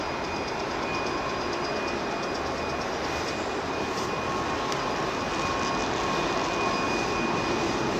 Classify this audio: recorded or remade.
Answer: recorded